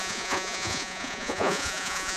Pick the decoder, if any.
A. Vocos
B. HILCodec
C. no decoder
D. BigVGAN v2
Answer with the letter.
A